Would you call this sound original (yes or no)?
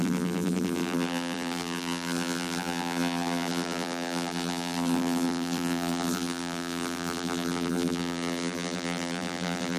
no